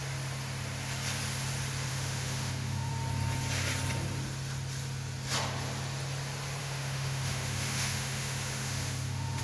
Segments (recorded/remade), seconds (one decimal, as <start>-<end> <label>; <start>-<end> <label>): 0.0-1.9 recorded; 1.9-2.9 remade; 2.9-6.6 recorded; 6.6-9.4 remade

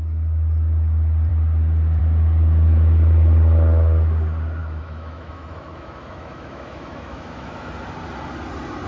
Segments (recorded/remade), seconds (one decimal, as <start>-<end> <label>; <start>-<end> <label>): 0.0-4.6 recorded; 4.6-7.7 remade; 7.7-8.9 recorded

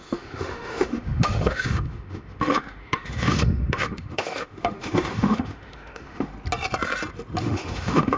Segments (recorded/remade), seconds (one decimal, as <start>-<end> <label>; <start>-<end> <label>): 0.0-6.3 remade; 6.3-7.4 recorded; 7.4-8.2 remade

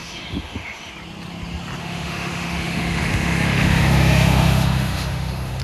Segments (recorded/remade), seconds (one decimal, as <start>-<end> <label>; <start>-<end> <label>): 0.0-0.9 remade; 0.9-1.8 recorded; 1.8-5.6 remade